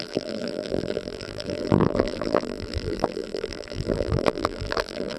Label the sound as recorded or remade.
remade